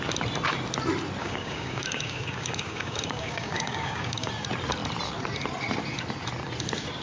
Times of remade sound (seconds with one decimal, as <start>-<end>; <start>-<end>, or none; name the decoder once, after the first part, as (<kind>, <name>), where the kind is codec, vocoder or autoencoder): 1.2-4.3 (codec, DAC)